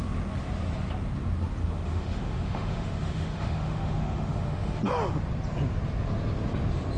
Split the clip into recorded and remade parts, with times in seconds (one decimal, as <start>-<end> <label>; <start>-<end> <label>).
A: 0.0-1.6 recorded; 1.6-4.8 remade; 4.8-7.0 recorded